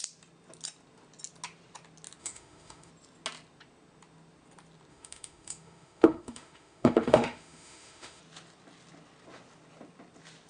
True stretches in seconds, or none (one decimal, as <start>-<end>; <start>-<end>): 0.0-2.2; 2.9-4.9; 8.2-10.5